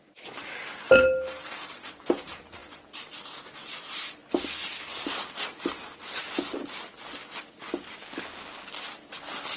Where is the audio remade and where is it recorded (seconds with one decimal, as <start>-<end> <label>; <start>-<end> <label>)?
0.0-9.6 recorded